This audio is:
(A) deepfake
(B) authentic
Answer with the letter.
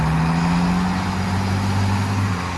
B